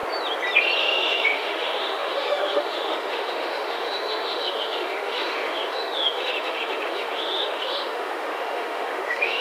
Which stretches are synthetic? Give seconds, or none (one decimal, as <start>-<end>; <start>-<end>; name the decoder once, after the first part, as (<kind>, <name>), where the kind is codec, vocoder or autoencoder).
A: 0.8-9.4 (autoencoder, DAC-VAE)